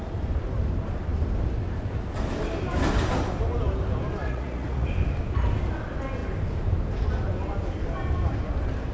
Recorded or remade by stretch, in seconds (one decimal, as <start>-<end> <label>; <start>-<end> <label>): 0.0-4.2 recorded; 4.2-4.9 remade; 4.9-8.9 recorded